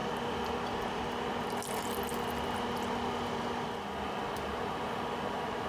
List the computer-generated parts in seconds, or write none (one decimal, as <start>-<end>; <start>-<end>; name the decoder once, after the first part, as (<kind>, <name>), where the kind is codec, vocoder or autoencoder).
none